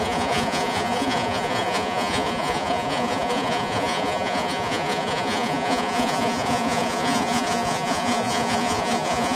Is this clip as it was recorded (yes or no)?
no